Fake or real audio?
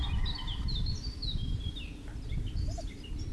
real